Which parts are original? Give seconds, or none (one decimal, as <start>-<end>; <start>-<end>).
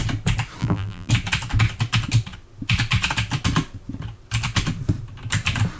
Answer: 0.0-0.6; 1.1-5.8